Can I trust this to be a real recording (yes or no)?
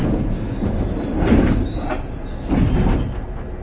yes